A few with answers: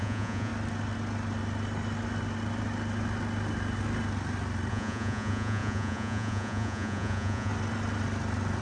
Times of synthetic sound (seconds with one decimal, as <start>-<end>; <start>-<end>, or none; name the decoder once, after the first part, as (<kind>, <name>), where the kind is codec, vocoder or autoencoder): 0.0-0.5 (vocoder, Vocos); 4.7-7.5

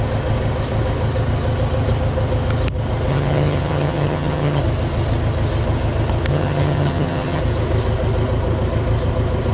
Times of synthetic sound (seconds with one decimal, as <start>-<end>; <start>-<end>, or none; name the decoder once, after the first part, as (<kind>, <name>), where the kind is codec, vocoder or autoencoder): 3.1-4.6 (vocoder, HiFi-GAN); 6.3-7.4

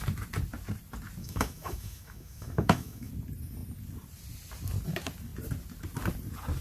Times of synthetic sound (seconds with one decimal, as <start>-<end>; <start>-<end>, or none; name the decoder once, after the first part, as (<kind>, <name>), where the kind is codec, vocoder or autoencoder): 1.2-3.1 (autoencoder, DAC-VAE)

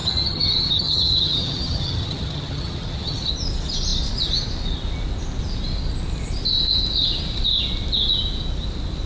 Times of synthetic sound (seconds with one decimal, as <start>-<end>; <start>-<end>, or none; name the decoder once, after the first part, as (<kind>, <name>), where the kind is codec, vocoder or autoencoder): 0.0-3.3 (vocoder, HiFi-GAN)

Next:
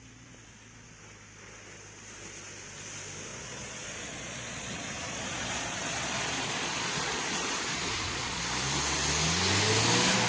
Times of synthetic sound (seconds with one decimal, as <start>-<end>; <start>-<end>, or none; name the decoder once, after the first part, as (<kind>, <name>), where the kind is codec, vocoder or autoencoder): 3.3-8.4 (vocoder, Vocos)

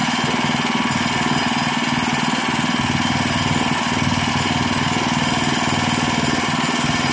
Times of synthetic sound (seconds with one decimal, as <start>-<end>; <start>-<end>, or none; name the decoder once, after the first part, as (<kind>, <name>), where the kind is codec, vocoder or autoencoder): none